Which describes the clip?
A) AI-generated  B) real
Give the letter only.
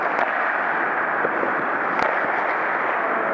B